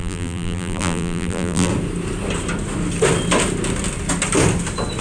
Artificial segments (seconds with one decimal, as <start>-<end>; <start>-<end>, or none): 0.0-1.7